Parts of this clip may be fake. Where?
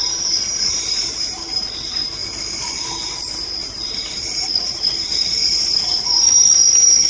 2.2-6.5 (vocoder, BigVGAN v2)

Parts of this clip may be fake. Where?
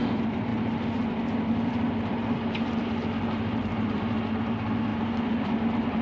0.5-4.1 (vocoder, BigVGAN v2); 4.9-6.0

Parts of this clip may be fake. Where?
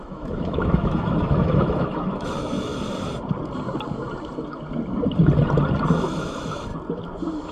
0.0-2.7 (autoencoder, DAC-VAE); 6.1-6.7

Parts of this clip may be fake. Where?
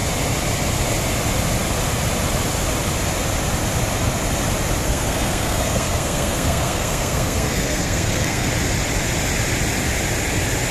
4.8-8.5 (codec, SNAC)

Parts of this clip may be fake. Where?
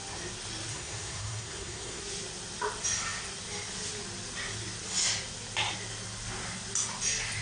0.7-2.0 (codec, SNAC)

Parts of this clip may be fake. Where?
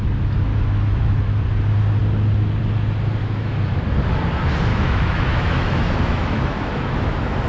0.5-1.3 (autoencoder, DAC-VAE); 3.2-3.8; 4.7-7.5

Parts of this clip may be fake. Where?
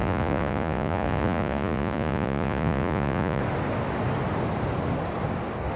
0.0-3.4 (vocoder, Vocos)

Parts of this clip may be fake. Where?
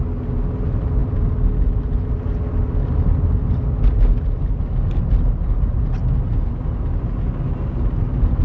none